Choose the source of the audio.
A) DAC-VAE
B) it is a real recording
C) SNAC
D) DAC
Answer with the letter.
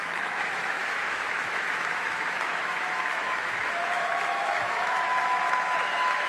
A